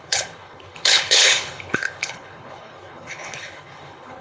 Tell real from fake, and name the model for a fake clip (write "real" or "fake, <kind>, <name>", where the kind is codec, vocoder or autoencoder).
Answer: fake, codec, HILCodec